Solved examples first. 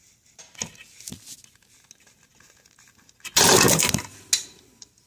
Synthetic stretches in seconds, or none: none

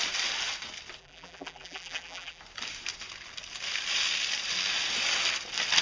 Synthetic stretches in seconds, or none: 1.0-2.4 (vocoder, BigVGAN v2)

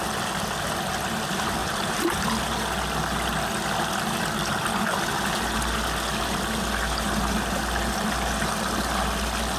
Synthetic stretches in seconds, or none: 1.6-2.2 (vocoder, BigVGAN v2)

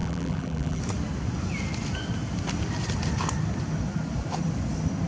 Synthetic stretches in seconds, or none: 0.0-0.8 (vocoder, BigVGAN v2)

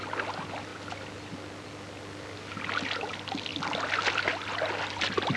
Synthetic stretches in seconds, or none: none

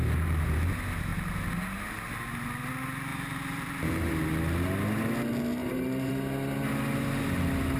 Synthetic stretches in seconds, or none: 3.1-4.1 (vocoder, BigVGAN v2); 5.6-6.1

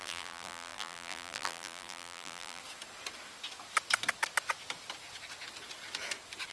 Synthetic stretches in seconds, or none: 0.0-2.6 (vocoder, BigVGAN v2)